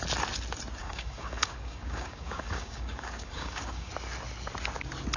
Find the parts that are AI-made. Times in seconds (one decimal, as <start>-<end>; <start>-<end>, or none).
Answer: 0.8-3.9